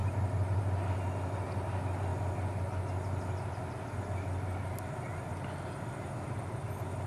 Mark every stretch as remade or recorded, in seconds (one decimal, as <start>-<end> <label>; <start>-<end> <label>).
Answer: 0.0-7.1 recorded